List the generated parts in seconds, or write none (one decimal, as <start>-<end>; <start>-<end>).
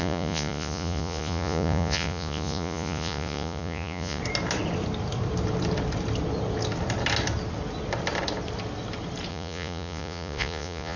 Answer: 0.0-4.2; 9.3-11.0